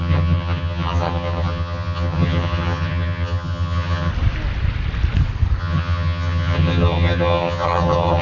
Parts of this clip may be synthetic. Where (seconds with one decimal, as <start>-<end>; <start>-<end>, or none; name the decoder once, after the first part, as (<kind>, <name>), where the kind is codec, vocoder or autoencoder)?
0.0-4.1 (vocoder, HiFi-GAN); 5.6-8.2